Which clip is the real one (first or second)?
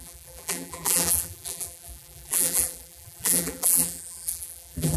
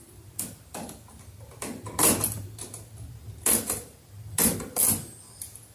second